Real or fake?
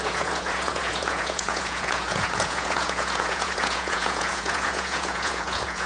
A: fake